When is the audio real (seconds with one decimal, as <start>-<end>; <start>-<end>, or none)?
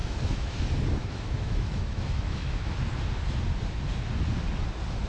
0.6-1.0; 2.7-5.1